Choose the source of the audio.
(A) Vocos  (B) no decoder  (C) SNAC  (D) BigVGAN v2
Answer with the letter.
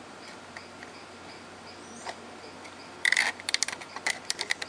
B